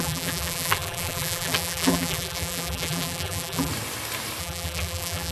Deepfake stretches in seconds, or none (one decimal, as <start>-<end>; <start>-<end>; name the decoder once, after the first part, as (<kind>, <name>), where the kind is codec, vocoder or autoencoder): 0.0-3.7 (vocoder, BigVGAN v2); 4.4-5.3